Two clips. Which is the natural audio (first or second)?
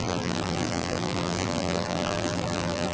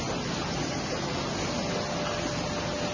second